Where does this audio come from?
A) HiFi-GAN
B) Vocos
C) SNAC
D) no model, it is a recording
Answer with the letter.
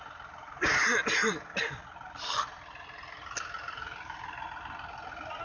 D